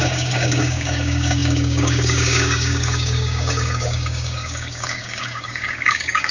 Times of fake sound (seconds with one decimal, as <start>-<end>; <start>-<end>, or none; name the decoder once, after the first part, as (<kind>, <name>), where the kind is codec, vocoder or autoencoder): 0.0-6.3 (codec, DAC)